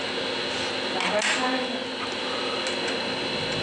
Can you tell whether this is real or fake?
real